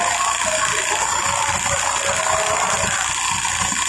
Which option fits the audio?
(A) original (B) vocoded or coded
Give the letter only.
A